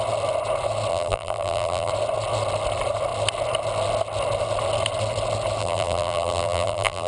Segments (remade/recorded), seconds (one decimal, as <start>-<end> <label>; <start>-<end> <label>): 0.0-0.9 recorded; 0.9-1.9 remade; 1.9-5.6 recorded; 5.6-7.1 remade